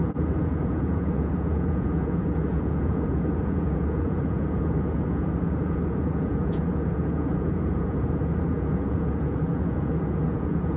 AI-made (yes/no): yes